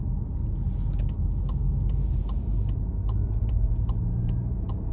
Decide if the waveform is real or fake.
real